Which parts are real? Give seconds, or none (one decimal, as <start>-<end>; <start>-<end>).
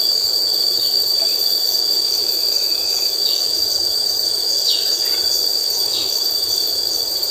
5.0-5.6